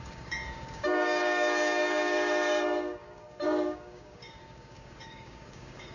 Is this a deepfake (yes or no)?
yes